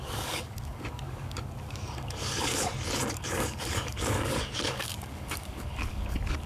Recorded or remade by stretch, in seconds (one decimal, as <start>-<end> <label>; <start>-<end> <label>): 0.0-2.5 remade; 2.5-3.1 recorded; 3.1-6.5 remade